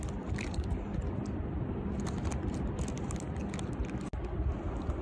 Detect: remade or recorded recorded